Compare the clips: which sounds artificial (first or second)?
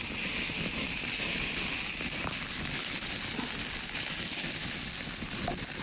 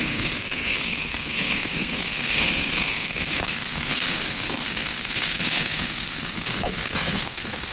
second